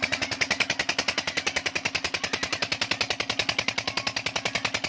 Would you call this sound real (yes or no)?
yes